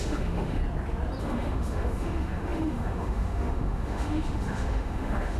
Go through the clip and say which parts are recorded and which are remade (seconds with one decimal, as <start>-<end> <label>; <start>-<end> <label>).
0.0-0.6 remade; 0.6-1.2 recorded; 1.2-5.4 remade

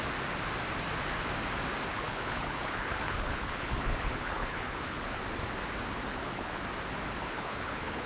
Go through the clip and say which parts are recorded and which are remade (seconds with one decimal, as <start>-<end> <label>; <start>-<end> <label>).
0.0-1.9 recorded; 1.9-5.2 remade; 5.2-6.1 recorded; 6.1-6.6 remade; 6.6-7.2 recorded; 7.2-8.1 remade

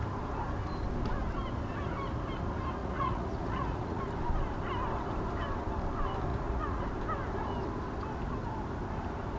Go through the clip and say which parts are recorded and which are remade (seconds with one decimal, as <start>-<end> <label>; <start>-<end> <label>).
0.0-2.8 recorded; 2.8-4.0 remade; 4.0-6.3 recorded; 6.3-6.9 remade; 6.9-9.4 recorded

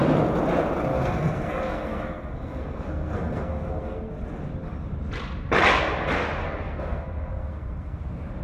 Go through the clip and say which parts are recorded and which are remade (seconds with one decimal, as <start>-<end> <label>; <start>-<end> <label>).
0.0-0.9 recorded; 0.9-4.1 remade; 4.1-6.4 recorded; 6.4-8.0 remade; 8.0-8.4 recorded

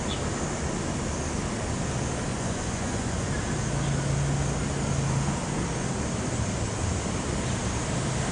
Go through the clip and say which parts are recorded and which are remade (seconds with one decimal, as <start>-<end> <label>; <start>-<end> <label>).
0.0-2.3 recorded; 2.3-3.3 remade; 3.3-8.3 recorded